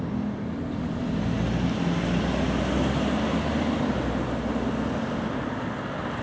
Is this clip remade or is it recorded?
recorded